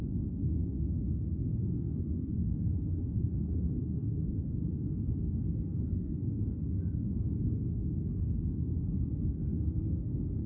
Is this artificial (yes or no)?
yes